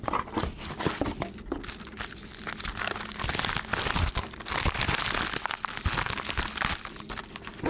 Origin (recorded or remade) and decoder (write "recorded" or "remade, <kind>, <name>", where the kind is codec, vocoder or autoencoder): recorded